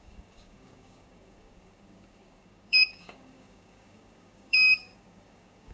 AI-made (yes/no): yes